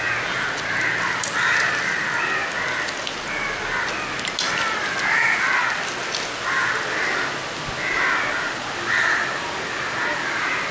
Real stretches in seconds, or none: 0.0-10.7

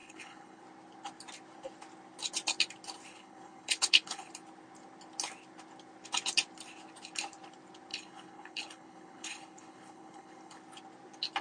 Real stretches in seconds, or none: 0.6-3.1; 4.3-7.9; 10.6-11.4

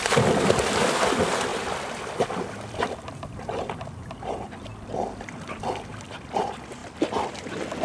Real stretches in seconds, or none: 0.0-1.5; 2.7-6.8; 7.3-7.8

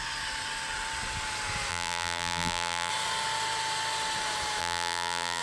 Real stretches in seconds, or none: 0.0-1.7; 2.9-4.6

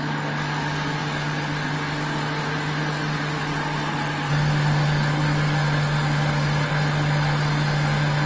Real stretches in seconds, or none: 0.0-8.3

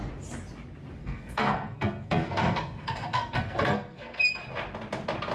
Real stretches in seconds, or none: 0.0-1.0; 4.2-5.3

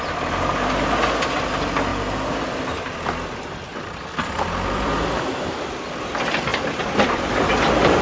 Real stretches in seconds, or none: 0.0-1.9; 5.2-6.5; 7.5-8.0